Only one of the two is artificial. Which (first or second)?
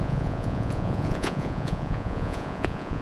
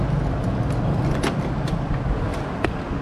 first